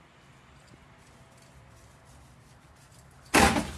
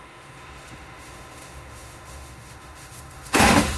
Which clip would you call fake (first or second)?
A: second